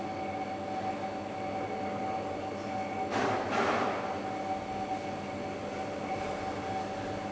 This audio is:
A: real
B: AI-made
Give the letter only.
A